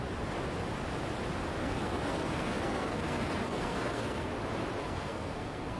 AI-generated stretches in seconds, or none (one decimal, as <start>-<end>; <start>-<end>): 1.6-4.3; 4.8-5.8